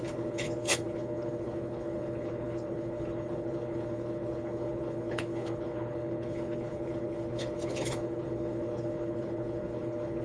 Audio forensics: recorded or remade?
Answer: remade